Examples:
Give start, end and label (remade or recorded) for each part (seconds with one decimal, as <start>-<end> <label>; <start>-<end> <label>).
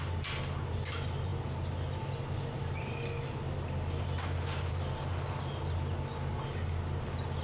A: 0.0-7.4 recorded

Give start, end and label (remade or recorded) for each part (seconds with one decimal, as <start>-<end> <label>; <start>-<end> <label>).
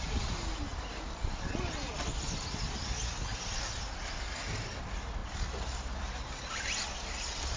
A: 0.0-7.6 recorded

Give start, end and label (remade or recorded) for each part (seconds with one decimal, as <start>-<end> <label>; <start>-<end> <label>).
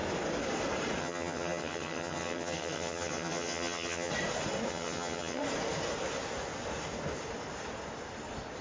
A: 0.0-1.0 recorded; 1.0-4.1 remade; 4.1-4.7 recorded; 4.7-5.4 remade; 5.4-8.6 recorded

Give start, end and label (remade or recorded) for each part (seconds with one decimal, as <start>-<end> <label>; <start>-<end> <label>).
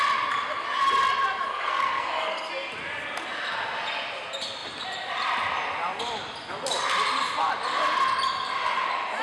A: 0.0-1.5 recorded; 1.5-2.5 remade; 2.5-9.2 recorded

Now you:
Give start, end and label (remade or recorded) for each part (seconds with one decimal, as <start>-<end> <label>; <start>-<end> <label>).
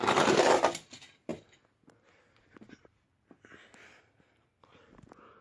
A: 0.0-5.4 recorded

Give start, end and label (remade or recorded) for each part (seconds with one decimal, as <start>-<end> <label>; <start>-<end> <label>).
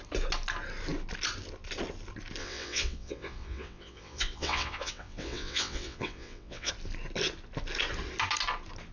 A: 0.0-2.4 recorded; 2.4-6.7 remade; 6.7-8.9 recorded